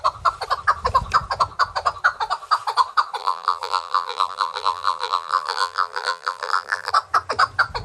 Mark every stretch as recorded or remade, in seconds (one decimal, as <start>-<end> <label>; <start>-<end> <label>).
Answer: 0.0-3.2 recorded; 3.2-6.9 remade; 6.9-7.8 recorded